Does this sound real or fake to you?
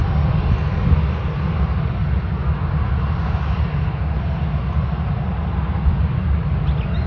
real